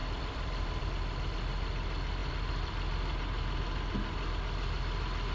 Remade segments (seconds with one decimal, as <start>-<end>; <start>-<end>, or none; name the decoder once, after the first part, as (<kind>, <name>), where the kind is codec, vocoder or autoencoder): 0.0-0.8 (vocoder, BigVGAN v2); 2.2-4.3